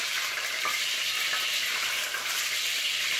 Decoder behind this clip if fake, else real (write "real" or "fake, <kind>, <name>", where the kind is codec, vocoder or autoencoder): fake, vocoder, BigVGAN v2